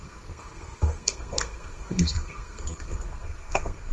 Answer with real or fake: fake